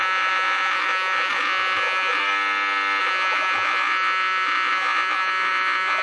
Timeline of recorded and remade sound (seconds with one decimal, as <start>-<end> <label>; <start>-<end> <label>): 0.0-2.2 remade; 2.2-3.0 recorded; 3.0-6.0 remade